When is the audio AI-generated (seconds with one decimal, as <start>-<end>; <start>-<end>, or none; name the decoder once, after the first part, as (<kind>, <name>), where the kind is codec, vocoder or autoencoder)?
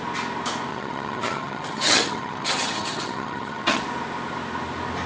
0.7-3.8 (vocoder, HiFi-GAN)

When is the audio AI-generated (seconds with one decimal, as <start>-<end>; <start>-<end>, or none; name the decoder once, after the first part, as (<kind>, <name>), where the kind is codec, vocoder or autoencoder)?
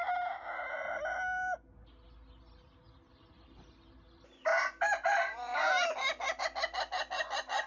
none